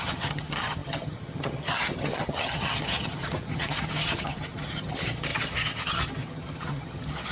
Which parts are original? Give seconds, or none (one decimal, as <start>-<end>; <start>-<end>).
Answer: none